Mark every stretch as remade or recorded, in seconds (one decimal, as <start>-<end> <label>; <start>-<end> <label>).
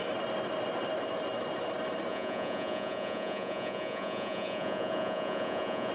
0.0-2.1 recorded; 2.1-5.9 remade